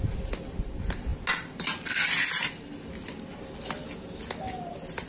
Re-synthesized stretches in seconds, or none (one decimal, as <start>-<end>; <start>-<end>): none